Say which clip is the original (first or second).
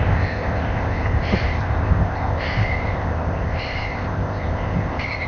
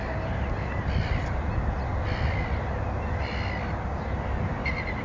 second